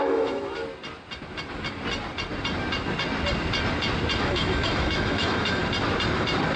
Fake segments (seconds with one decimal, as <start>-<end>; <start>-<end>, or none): 0.0-0.6; 4.2-5.6